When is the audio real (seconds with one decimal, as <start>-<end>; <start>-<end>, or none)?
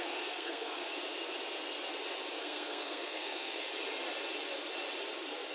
0.8-2.3; 3.7-5.5